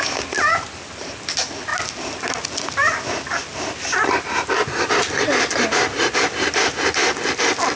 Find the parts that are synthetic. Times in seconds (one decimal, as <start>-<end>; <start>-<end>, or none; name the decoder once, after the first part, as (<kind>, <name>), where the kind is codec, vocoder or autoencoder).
none